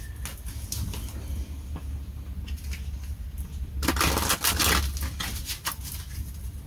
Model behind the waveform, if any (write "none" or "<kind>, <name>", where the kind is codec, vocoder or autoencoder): none